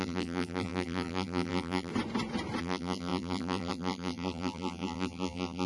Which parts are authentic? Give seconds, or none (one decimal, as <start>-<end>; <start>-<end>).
1.9-2.6